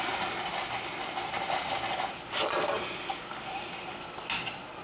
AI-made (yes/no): no